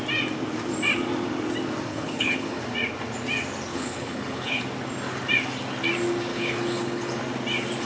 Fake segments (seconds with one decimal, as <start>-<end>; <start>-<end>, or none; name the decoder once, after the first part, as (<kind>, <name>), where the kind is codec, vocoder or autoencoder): 1.9-2.6 (codec, HILCodec); 3.7-4.6; 6.3-7.2